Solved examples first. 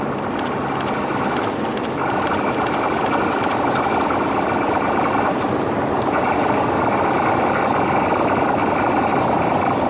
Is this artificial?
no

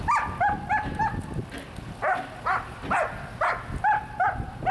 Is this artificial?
no